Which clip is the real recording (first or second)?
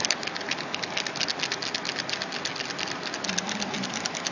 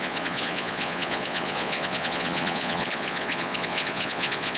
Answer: first